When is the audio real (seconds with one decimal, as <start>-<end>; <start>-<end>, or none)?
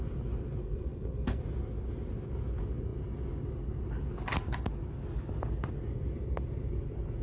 0.0-0.6; 1.4-7.2